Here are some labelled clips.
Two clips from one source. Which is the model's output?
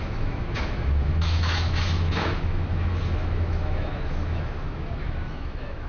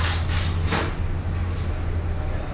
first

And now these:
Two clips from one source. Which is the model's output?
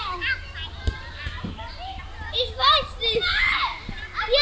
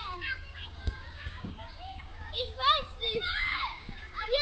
second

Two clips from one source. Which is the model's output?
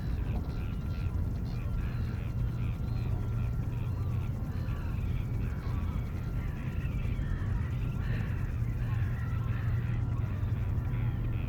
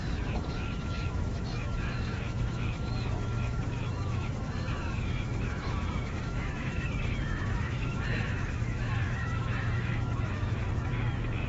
second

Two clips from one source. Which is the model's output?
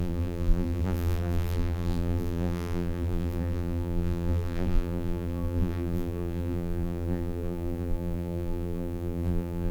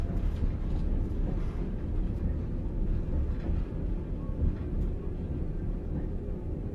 first